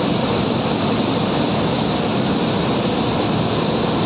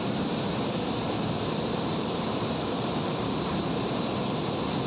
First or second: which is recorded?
first